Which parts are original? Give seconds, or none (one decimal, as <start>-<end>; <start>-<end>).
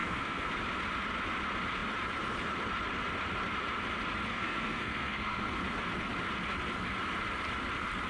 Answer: 0.5-4.3; 5.6-8.1